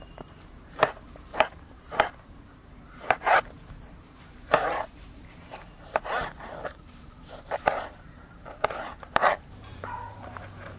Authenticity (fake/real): fake